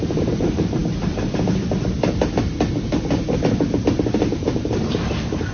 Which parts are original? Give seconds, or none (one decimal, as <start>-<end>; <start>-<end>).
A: 0.8-4.1